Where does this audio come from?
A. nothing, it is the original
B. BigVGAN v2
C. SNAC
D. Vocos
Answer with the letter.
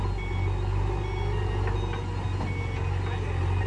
A